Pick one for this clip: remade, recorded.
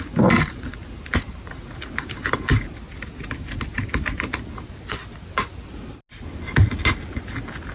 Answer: recorded